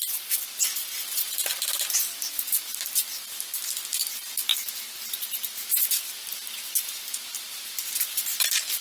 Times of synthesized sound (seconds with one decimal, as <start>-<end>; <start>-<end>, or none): none